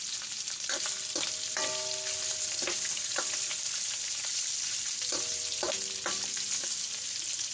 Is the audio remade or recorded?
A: recorded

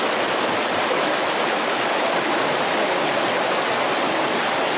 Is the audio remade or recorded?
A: recorded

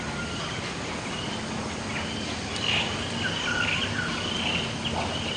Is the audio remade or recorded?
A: recorded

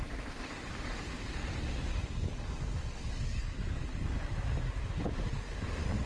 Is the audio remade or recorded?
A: recorded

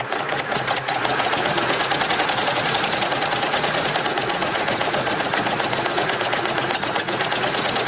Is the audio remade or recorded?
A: remade